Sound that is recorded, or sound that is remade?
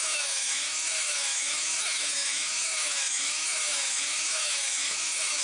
remade